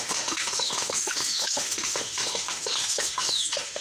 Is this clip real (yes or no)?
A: no